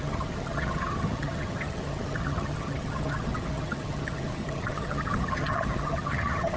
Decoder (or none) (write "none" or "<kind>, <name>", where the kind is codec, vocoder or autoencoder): vocoder, HiFi-GAN